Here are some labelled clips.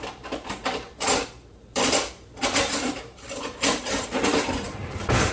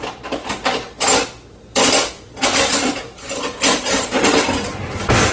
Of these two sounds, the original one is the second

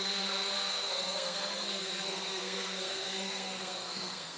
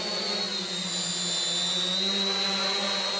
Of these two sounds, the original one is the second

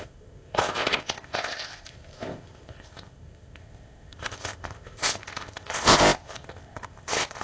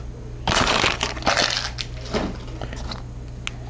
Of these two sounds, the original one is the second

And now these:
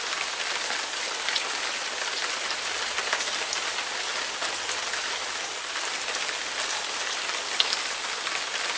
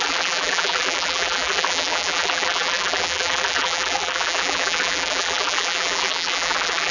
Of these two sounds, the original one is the first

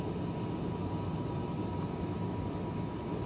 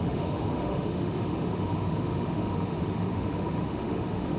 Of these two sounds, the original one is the first